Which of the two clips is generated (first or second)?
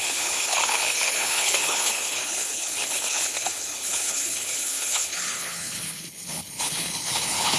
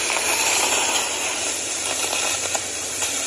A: first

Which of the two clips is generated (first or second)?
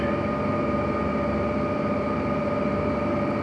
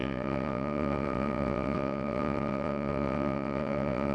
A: second